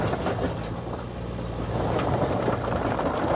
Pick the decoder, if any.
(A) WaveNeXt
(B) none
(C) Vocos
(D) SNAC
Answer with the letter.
B